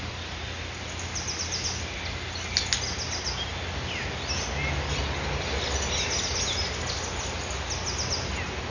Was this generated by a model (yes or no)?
no